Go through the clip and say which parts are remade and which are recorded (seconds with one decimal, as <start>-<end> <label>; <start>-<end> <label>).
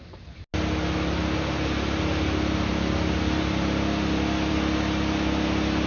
0.0-5.9 recorded